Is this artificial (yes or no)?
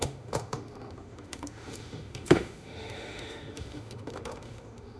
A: yes